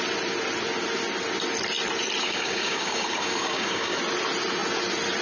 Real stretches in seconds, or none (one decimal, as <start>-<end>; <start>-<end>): 0.0-2.2; 4.0-5.2